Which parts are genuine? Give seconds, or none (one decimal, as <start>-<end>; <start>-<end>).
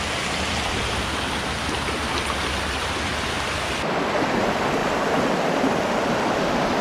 0.0-4.8; 5.6-6.8